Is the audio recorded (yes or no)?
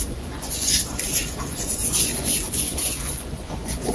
no